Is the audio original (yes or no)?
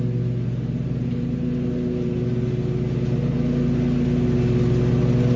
yes